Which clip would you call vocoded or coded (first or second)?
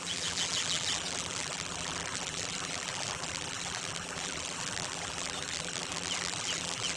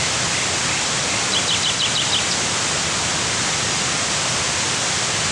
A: first